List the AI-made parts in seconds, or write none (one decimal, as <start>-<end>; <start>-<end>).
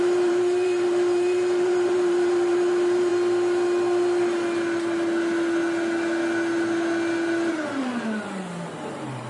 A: 0.0-3.1; 7.5-9.3